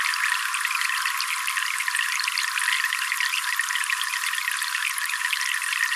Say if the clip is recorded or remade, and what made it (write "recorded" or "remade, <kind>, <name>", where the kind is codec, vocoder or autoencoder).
recorded